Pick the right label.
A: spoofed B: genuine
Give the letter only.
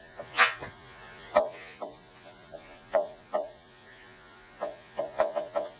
A